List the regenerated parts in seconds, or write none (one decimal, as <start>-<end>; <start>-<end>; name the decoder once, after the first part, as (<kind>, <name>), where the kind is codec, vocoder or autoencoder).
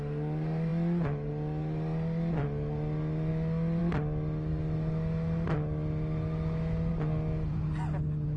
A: none